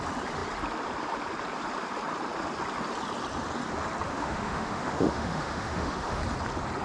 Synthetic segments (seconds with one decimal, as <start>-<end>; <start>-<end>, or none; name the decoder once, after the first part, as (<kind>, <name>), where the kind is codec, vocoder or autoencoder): 4.1-6.2 (autoencoder, DAC-VAE)